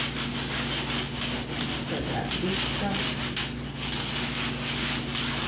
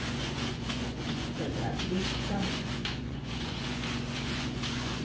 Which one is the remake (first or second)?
second